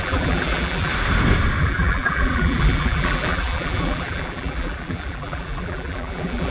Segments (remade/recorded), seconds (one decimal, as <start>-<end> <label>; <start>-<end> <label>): 0.0-0.9 remade; 0.9-1.6 recorded; 1.6-6.5 remade